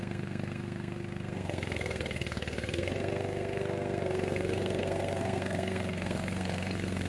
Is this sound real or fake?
fake